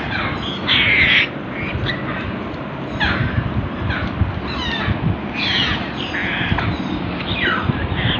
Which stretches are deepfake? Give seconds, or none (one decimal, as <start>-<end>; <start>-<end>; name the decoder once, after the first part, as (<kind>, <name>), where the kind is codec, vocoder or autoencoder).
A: 6.2-8.2 (vocoder, BigVGAN v2)

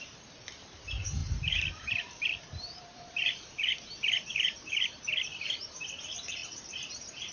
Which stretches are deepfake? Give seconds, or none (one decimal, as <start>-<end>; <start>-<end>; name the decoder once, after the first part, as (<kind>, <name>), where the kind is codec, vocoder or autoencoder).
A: 0.0-7.3 (vocoder, BigVGAN v2)

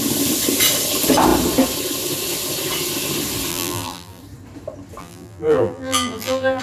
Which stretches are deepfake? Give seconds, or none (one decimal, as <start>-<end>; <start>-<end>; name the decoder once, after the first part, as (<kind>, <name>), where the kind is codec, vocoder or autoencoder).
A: 3.5-4.2 (vocoder, BigVGAN v2); 5.0-6.6

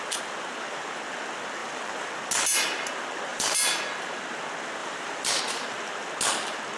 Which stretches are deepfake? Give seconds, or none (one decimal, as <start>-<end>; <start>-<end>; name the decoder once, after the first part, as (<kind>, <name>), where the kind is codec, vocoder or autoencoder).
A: 1.6-2.1 (vocoder, BigVGAN v2); 3.3-3.8; 4.8-5.4

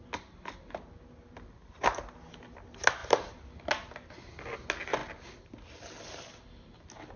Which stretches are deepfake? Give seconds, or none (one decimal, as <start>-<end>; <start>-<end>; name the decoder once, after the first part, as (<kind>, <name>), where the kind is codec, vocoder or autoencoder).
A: none

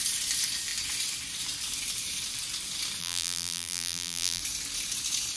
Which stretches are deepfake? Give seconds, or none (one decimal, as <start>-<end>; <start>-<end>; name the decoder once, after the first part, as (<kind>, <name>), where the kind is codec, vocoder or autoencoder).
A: 3.0-4.4 (vocoder, BigVGAN v2)

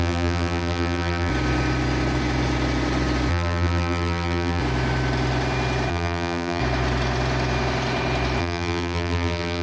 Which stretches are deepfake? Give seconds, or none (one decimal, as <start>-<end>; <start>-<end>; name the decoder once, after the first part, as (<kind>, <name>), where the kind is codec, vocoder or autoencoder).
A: 0.0-1.3 (vocoder, BigVGAN v2); 3.3-4.6; 5.9-6.6; 8.4-9.6